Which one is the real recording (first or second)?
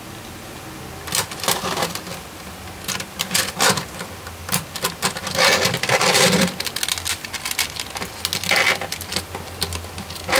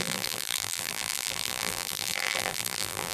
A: first